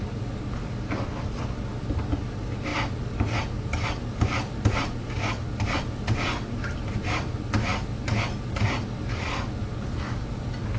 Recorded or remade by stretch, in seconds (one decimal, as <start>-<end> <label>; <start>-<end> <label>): 0.0-10.8 recorded